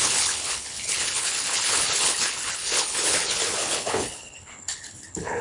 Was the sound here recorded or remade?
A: remade